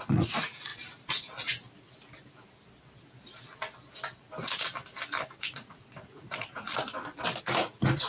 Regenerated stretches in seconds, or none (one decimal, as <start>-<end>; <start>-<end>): 0.0-0.7; 5.4-6.7; 7.4-8.1